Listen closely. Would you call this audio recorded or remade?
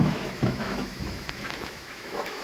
remade